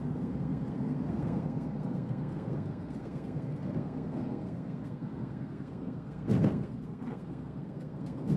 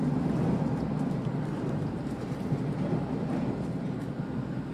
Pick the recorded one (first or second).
second